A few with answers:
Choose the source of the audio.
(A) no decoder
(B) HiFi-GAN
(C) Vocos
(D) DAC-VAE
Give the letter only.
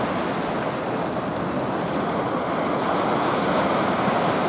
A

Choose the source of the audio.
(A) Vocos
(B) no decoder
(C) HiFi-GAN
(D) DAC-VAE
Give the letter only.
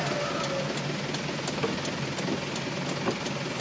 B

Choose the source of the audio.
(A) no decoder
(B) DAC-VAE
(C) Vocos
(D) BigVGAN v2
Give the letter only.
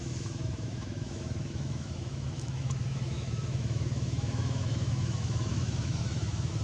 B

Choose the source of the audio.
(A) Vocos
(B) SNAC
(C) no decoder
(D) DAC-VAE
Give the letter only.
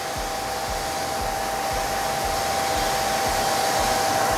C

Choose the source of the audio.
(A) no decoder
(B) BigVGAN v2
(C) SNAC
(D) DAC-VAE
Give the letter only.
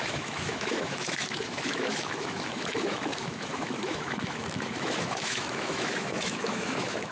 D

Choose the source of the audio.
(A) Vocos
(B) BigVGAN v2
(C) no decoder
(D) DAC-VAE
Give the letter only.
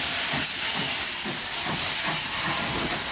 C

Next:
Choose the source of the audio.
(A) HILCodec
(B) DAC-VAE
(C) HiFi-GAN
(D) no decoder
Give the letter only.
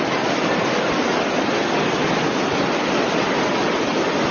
D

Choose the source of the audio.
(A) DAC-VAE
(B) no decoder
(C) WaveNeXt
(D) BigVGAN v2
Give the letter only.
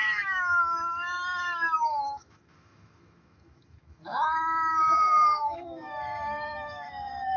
A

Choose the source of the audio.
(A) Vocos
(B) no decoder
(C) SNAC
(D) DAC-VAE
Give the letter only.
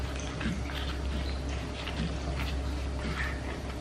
B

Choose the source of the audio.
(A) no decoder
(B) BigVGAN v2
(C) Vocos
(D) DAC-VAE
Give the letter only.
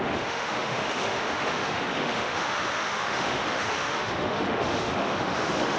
D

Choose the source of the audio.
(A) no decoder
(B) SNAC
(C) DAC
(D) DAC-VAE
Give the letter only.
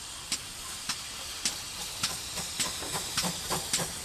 A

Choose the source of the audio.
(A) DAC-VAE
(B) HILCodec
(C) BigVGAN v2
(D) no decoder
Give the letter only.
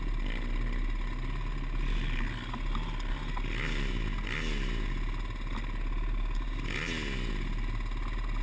D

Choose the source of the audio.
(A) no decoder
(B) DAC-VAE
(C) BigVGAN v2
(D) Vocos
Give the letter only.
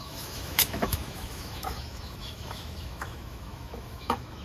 B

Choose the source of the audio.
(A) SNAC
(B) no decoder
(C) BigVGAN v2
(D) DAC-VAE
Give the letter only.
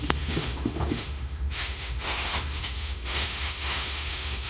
D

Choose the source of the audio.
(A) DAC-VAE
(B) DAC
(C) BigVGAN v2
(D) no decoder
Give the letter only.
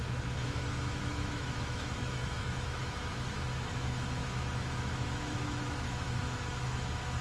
A